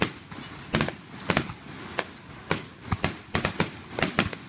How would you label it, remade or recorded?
recorded